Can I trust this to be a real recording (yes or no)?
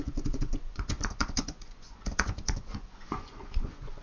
no